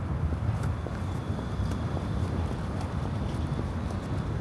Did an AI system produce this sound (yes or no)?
no